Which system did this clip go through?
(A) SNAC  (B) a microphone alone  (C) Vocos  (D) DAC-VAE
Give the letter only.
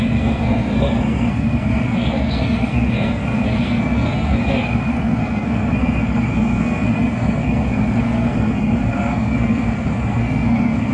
A